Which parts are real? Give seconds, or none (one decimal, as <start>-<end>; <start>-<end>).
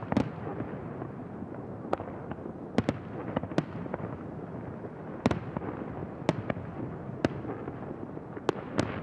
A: 0.0-9.0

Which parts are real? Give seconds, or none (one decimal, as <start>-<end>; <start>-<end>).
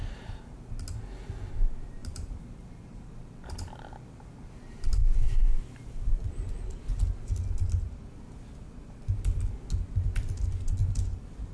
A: 0.7-2.0; 4.2-5.0; 7.0-8.8; 9.4-11.5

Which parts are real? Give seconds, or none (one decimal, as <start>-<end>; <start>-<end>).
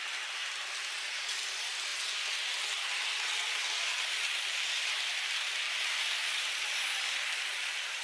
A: 0.0-8.0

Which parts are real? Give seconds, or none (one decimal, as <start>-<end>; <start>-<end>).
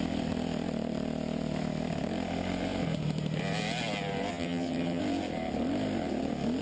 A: 0.0-4.3; 5.0-6.6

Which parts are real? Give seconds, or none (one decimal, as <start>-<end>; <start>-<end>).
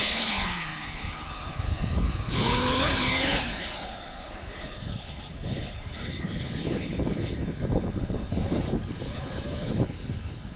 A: none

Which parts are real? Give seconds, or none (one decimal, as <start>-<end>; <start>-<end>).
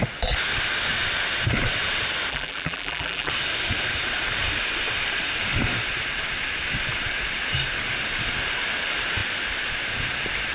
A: 0.0-2.3; 3.3-10.5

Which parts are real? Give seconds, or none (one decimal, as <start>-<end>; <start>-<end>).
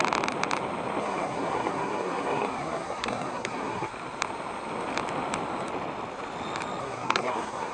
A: 0.0-1.0; 3.9-6.8